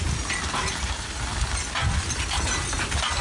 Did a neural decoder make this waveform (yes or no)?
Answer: no